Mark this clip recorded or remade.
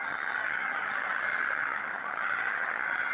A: remade